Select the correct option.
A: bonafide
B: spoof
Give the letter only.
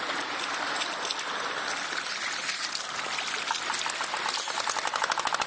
A